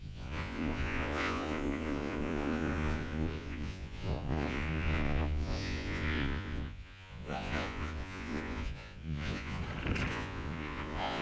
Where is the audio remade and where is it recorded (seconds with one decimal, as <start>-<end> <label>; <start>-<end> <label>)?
0.0-9.6 remade; 9.6-10.1 recorded; 10.1-11.2 remade